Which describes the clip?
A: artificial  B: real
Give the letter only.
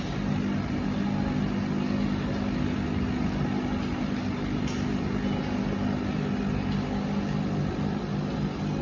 B